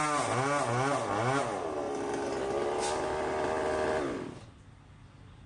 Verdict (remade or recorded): recorded